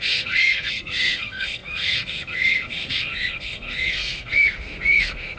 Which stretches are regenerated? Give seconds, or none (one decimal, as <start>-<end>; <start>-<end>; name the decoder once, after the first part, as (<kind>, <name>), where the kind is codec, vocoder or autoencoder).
0.0-5.4 (codec, SNAC)